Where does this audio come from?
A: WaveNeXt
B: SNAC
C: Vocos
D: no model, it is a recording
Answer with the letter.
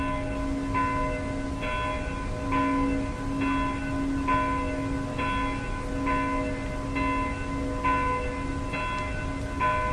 D